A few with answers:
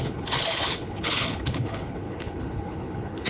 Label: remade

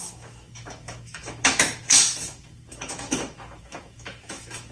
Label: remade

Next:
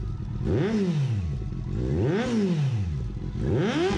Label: recorded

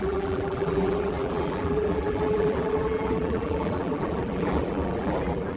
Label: remade